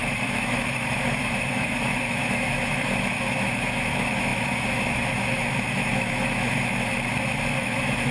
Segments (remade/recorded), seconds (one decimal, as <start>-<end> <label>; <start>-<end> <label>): 0.0-6.9 remade; 6.9-7.6 recorded; 7.6-8.1 remade